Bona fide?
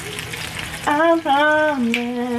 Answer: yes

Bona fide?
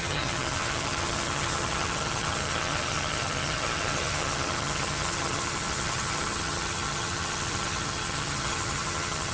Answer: no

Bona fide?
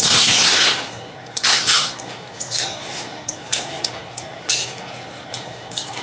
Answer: no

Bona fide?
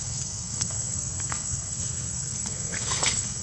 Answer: no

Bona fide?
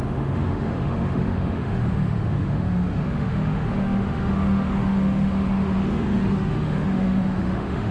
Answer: no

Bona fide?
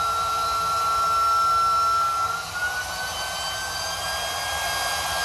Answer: yes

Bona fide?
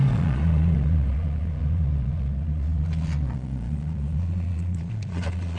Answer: no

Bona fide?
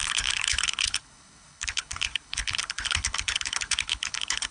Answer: no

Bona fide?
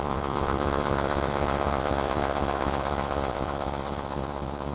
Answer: no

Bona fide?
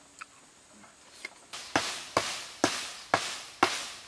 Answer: yes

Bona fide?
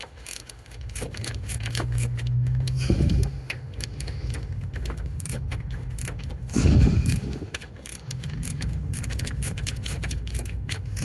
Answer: no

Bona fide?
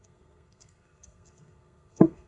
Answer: no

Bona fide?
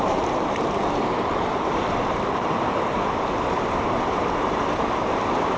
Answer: no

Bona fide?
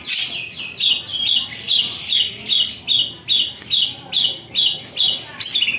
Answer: yes